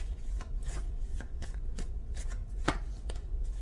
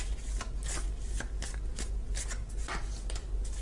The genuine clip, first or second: second